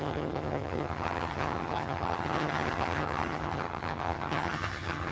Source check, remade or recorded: remade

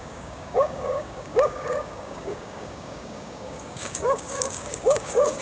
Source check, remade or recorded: remade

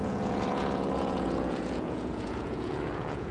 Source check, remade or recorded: remade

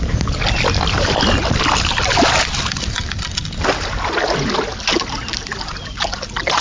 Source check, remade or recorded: recorded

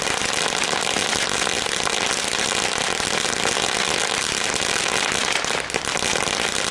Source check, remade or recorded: recorded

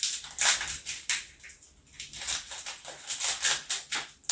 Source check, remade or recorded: recorded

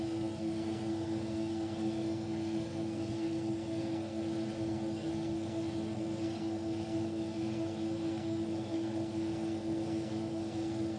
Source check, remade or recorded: remade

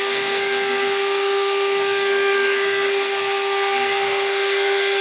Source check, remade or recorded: remade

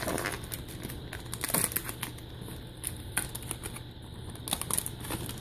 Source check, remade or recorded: recorded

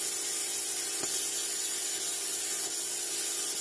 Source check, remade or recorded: recorded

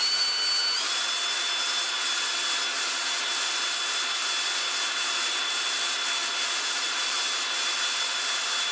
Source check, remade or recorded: recorded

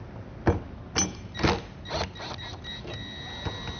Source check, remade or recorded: recorded